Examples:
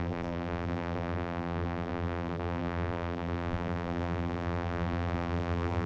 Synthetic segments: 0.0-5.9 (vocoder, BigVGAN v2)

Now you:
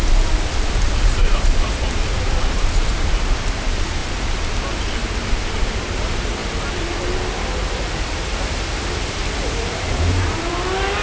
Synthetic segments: 0.0-4.0 (vocoder, BigVGAN v2); 5.6-6.4; 9.5-11.0

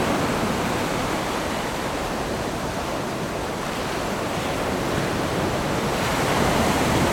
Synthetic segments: 1.0-5.3 (vocoder, BigVGAN v2); 6.1-7.1

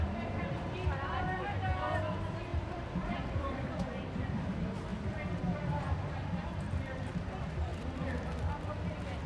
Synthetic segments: 2.5-3.2 (vocoder, BigVGAN v2)

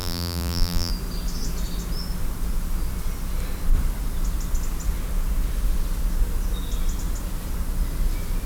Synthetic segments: 0.0-0.9 (vocoder, BigVGAN v2)